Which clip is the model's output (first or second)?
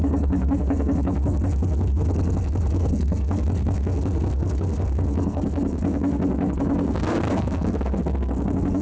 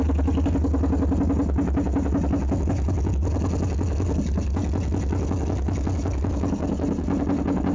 first